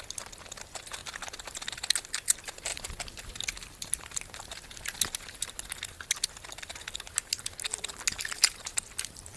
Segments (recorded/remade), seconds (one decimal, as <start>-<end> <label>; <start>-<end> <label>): 0.0-9.4 recorded